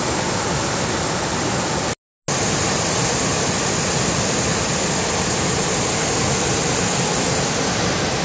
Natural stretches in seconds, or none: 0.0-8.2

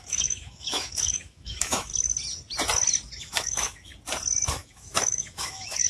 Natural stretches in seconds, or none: 1.9-3.2; 3.9-4.5

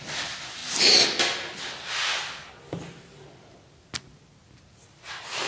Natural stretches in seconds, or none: 0.0-5.5